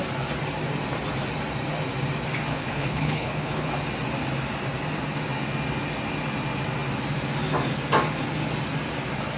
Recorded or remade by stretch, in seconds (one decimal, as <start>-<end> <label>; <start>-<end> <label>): 0.0-2.5 recorded; 2.5-3.7 remade; 3.7-9.4 recorded